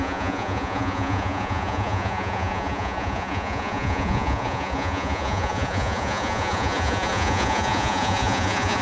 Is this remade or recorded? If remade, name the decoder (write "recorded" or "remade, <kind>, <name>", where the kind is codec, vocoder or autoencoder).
remade, vocoder, Vocos